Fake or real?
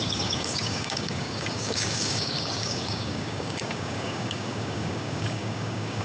fake